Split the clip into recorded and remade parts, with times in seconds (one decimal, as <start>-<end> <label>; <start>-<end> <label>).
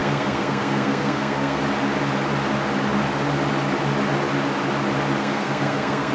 0.0-1.6 remade; 1.6-5.2 recorded; 5.2-6.1 remade